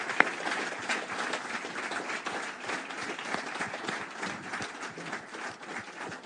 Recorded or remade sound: recorded